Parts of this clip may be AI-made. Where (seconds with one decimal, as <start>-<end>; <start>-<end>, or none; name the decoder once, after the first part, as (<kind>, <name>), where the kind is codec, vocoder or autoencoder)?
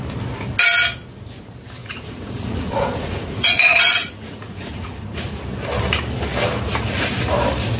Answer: 1.8-5.4 (vocoder, Vocos)